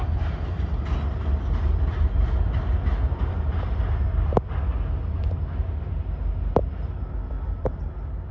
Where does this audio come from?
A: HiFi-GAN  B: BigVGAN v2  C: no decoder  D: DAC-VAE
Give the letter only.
C